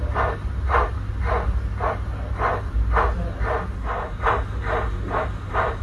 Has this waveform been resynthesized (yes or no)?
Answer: no